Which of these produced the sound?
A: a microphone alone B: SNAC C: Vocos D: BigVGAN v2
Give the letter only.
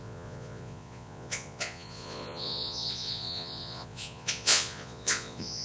C